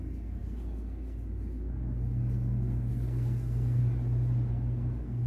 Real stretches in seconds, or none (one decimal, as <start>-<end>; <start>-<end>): 3.8-4.5